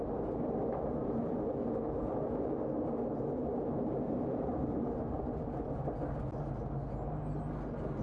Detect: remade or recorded recorded